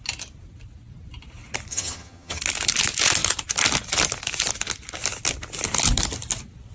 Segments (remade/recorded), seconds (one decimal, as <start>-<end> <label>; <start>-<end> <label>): 0.0-1.7 recorded; 1.7-2.4 remade; 2.4-6.7 recorded

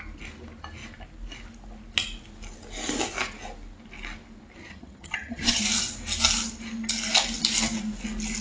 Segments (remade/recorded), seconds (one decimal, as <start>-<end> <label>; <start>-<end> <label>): 0.0-4.6 recorded; 4.6-5.6 remade; 5.6-8.4 recorded

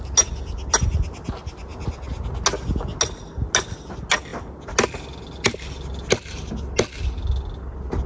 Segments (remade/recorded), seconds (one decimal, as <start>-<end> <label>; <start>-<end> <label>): 0.0-8.1 recorded

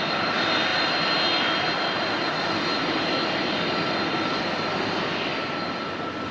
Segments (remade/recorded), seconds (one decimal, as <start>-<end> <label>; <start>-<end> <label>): 0.0-6.3 recorded